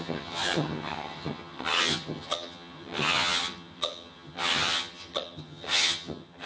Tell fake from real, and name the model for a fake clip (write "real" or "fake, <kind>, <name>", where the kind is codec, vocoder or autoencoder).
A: fake, vocoder, HiFi-GAN